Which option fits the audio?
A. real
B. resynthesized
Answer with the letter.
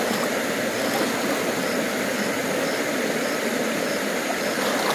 A